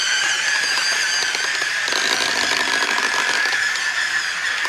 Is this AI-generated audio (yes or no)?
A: yes